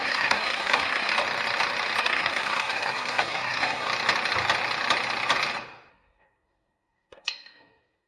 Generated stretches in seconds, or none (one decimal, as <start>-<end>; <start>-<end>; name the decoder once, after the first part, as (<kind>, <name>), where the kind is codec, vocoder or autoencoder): 0.0-1.1 (codec, SNAC); 2.0-3.9; 5.9-8.1

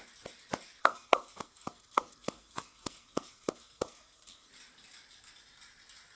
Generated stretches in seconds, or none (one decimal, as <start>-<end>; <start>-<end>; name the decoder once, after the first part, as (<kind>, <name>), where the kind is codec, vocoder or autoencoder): 0.8-4.5 (codec, SNAC)

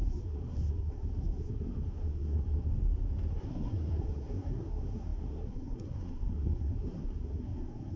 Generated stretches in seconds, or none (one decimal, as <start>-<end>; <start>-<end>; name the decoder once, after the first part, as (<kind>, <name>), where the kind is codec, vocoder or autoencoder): 0.0-2.7 (codec, SNAC); 3.3-8.0

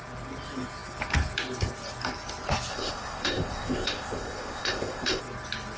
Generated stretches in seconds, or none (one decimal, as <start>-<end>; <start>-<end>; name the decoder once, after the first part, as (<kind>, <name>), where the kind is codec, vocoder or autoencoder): 2.7-5.2 (codec, ZipCodec)

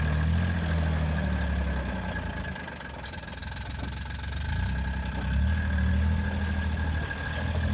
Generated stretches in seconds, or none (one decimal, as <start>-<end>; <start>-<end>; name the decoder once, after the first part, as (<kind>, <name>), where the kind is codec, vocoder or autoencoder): none

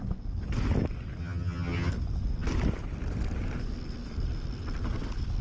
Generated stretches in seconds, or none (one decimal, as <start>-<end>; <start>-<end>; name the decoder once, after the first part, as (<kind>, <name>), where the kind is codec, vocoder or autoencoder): 1.2-1.9 (vocoder, HiFi-GAN)

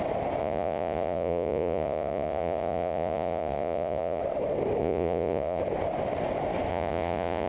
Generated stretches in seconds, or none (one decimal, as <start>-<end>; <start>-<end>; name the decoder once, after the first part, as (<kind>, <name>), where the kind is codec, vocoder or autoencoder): 0.4-4.2 (vocoder, Vocos); 4.8-5.6; 6.7-7.5